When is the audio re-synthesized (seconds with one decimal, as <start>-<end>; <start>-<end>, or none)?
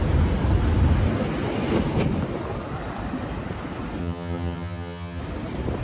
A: 4.0-5.2